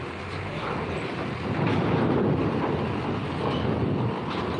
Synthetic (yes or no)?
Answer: no